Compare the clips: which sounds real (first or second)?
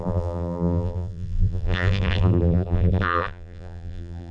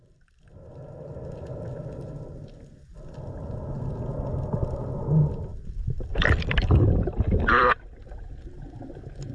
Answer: second